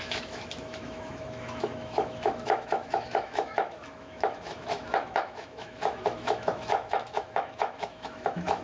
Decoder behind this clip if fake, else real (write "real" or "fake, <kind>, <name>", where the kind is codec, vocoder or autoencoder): fake, autoencoder, DAC-VAE